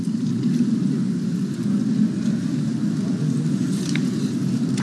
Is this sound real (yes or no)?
yes